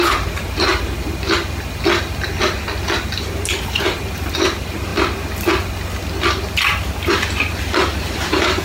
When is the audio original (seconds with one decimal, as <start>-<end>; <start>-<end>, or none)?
0.7-3.2; 4.9-6.4